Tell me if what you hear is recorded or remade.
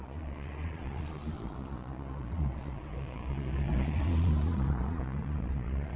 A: remade